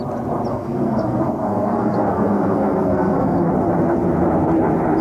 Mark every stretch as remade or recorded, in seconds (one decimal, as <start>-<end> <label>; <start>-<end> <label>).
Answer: 0.0-0.5 recorded; 0.5-3.5 remade; 3.5-5.0 recorded